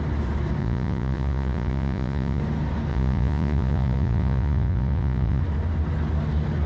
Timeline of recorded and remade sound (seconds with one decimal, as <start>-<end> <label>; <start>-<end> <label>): 0.0-0.6 recorded; 0.6-2.4 remade; 2.4-2.9 recorded; 2.9-5.4 remade; 5.4-6.7 recorded